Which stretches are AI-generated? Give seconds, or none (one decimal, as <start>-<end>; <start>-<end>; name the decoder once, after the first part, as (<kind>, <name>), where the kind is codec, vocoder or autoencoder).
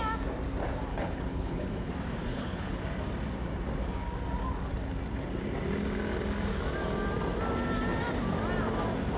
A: 0.9-1.9 (codec, HILCodec); 2.3-2.8